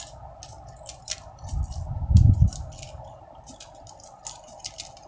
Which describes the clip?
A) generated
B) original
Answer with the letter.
B